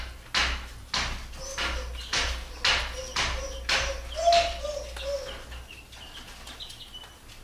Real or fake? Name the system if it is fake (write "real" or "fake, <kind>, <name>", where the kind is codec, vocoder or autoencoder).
real